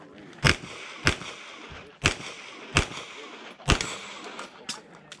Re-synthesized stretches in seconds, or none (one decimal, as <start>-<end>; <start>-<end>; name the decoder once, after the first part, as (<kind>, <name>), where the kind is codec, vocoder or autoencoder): none

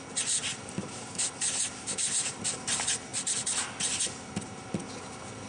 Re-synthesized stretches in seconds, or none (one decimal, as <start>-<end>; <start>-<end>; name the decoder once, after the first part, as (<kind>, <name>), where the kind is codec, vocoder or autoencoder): 0.5-2.4 (vocoder, BigVGAN v2)

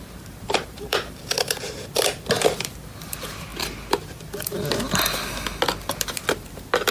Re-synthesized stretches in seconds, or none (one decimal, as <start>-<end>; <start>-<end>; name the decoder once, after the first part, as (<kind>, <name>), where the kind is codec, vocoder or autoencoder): 0.0-3.5 (vocoder, BigVGAN v2)